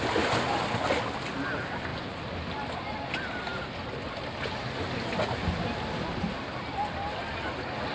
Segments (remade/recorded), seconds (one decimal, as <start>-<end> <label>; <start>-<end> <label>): 0.0-7.9 recorded